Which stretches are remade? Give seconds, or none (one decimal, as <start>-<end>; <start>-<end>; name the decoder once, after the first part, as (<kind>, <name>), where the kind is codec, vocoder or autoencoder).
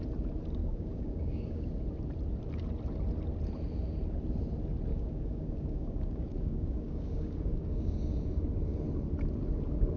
0.6-1.7 (codec, DAC); 4.9-8.2